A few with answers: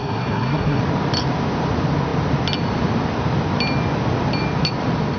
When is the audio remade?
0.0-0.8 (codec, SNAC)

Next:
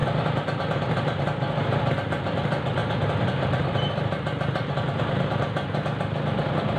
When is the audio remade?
none